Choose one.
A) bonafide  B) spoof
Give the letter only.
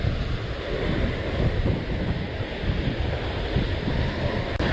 A